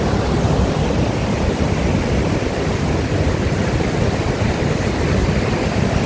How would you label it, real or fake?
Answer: real